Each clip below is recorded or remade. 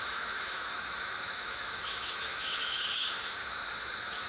remade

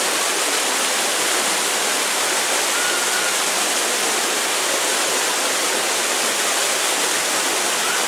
recorded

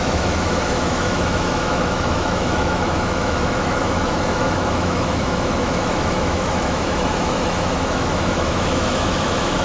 remade